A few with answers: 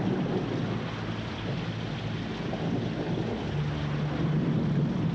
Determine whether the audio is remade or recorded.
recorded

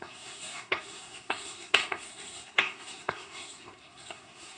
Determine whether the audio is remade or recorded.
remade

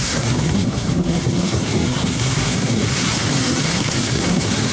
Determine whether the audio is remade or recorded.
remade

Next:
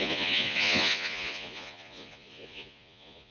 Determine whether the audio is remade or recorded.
remade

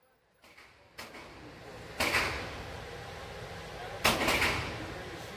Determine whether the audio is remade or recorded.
recorded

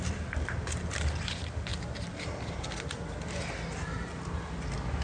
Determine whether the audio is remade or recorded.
recorded